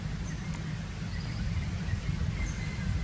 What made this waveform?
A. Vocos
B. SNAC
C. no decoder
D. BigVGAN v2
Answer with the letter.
C